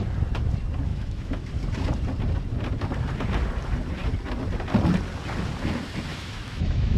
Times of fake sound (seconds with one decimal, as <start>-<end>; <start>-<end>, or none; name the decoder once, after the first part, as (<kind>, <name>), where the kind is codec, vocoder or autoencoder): 0.9-1.5 (autoencoder, DAC-VAE); 6.1-7.0